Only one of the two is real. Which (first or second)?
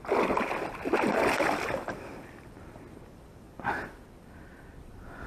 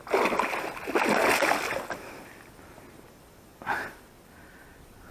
second